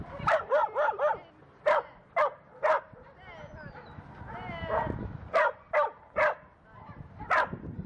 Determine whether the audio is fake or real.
real